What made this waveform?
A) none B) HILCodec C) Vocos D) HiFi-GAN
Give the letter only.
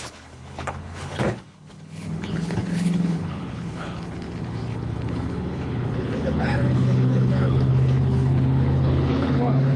B